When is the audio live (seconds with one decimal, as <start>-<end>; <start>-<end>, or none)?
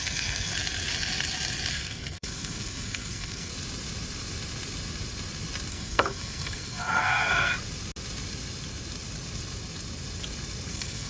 0.5-1.7; 3.5-5.7; 7.5-10.7